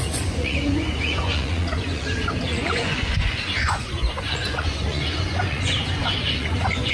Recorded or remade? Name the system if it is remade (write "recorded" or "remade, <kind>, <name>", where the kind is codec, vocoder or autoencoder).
remade, vocoder, Vocos